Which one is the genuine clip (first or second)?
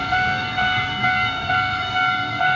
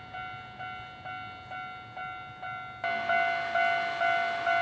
second